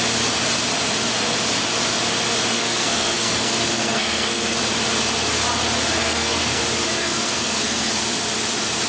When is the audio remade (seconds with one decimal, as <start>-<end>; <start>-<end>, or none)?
2.5-4.6; 6.0-6.6; 7.0-8.0